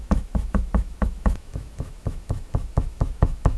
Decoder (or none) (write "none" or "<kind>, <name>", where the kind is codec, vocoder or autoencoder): autoencoder, DAC-VAE